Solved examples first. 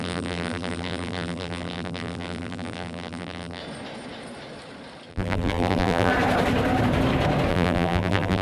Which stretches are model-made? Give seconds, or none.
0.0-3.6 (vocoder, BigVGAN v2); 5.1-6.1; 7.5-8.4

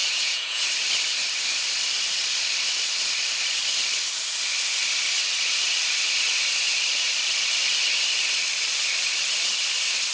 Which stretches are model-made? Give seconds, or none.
0.0-0.6 (vocoder, Vocos)

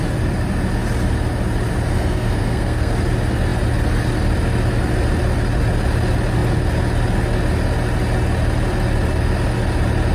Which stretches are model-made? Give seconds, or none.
1.9-2.9 (codec, SNAC)